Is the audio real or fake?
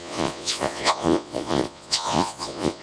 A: fake